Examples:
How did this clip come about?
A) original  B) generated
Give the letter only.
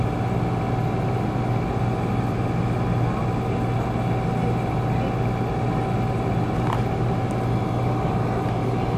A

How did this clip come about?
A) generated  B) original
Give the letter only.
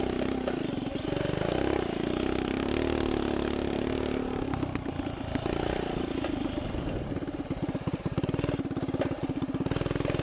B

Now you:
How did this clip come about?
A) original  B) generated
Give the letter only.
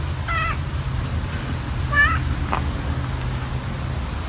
A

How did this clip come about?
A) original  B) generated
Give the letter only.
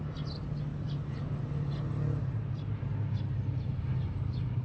A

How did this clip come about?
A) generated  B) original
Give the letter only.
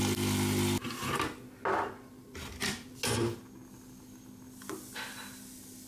B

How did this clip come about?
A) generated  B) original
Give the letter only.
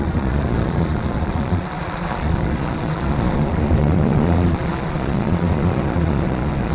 A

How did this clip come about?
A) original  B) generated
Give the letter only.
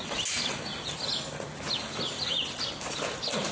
A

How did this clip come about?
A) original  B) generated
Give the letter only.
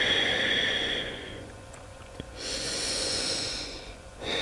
B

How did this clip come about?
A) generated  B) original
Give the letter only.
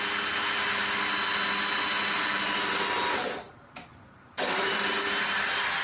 B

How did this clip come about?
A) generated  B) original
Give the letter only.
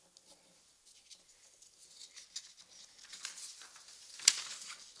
B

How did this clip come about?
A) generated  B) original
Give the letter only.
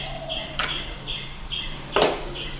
A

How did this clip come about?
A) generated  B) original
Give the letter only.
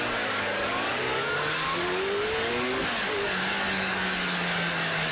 A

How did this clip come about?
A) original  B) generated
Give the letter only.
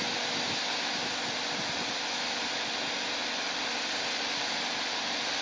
A